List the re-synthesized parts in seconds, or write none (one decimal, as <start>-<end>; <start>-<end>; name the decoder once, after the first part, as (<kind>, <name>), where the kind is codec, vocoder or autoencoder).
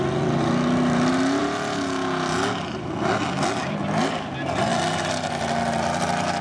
none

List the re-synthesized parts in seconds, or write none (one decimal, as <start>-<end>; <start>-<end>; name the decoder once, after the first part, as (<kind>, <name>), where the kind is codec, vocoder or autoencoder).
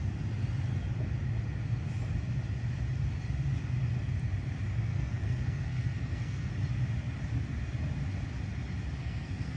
4.9-6.5 (codec, SNAC); 9.0-9.6